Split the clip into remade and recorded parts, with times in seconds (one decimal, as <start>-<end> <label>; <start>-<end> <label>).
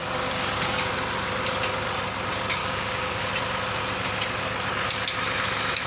0.0-0.9 remade; 0.9-2.6 recorded; 2.6-3.3 remade; 3.3-5.9 recorded